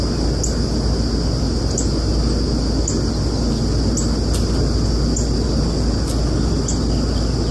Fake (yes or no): no